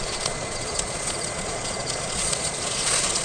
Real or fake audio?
fake